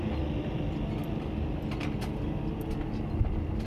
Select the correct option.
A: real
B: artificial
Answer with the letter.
A